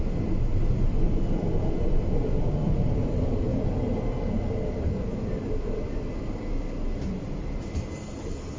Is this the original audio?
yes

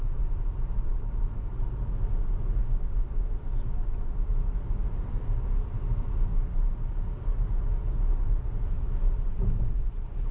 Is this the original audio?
yes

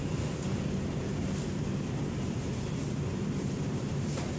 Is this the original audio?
yes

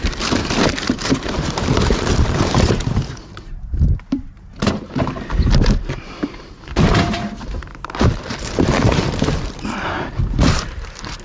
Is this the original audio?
no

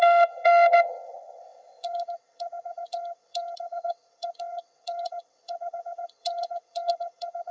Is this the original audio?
no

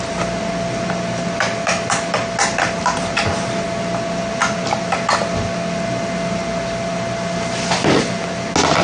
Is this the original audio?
yes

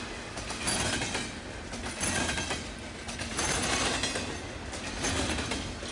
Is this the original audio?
yes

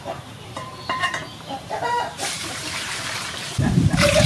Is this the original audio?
no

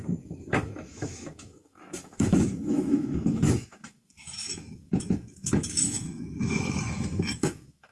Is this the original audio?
no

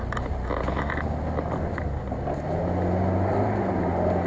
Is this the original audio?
yes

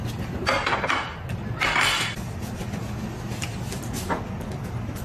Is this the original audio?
yes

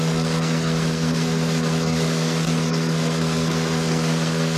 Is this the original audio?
no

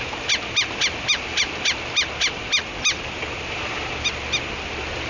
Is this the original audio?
yes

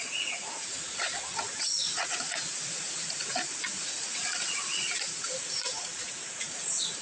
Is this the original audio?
no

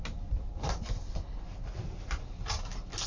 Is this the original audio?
yes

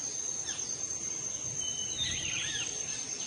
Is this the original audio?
yes